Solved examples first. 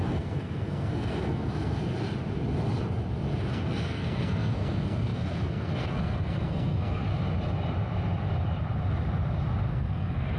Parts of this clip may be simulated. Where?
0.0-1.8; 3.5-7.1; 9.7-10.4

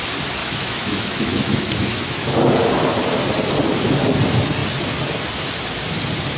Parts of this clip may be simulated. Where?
0.4-2.4

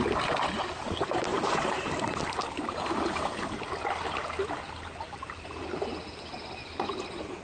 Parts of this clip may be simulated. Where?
1.3-3.6; 6.6-7.4

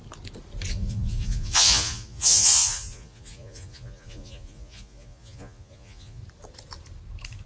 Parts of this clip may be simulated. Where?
0.7-6.2

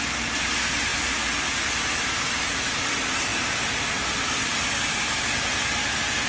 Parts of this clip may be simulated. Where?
none

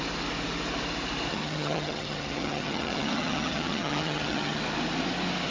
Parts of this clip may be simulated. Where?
1.3-4.6

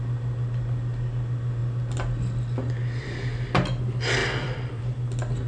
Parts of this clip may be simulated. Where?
4.2-4.8